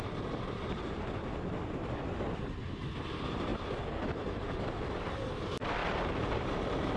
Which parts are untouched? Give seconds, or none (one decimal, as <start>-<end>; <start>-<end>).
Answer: 0.0-3.5; 4.8-5.8